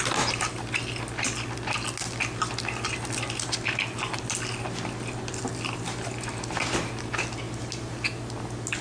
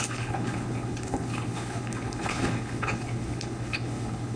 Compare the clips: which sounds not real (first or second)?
second